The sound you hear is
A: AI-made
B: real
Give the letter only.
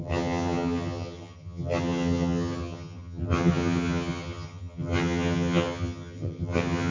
A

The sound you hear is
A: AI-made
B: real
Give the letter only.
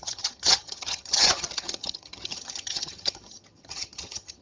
A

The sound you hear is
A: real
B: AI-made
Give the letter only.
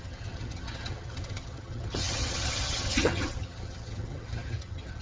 B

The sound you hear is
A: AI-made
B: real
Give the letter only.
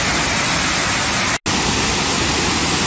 B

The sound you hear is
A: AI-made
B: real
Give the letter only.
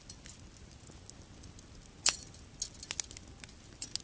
B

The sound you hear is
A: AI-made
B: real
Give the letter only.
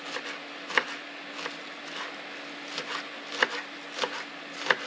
B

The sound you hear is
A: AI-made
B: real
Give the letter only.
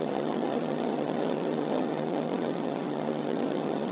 A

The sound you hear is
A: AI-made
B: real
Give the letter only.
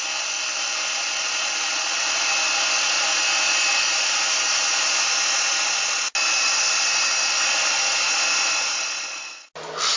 B